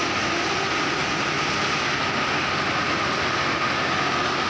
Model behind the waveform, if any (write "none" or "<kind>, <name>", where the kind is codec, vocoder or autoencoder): none